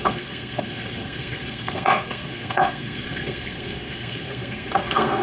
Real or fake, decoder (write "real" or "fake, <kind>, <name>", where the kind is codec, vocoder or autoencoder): fake, codec, SNAC